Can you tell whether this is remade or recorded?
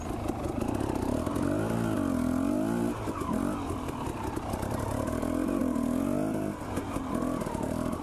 recorded